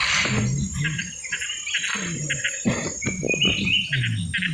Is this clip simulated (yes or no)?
no